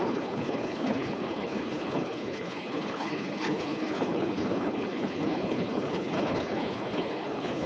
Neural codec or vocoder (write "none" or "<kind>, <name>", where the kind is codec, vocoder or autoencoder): codec, HILCodec